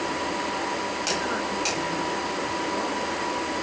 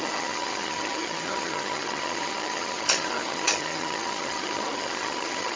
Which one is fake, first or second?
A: second